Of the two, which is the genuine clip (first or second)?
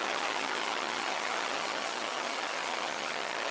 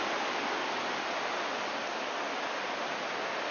second